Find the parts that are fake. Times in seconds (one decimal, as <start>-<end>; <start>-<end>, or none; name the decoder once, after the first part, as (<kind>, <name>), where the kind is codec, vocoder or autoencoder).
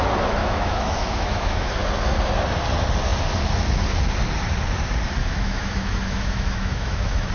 0.4-1.7 (autoencoder, DAC-VAE); 5.2-7.3